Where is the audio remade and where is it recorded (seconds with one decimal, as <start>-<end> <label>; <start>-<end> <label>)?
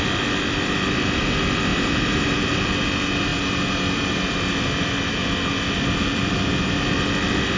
0.0-1.7 recorded; 1.7-2.7 remade; 2.7-7.6 recorded